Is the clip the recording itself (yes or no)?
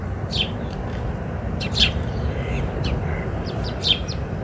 no